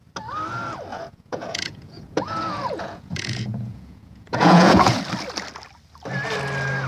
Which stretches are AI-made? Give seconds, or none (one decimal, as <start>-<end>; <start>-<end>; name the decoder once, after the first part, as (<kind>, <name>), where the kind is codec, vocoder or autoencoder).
0.9-5.0 (vocoder, Vocos)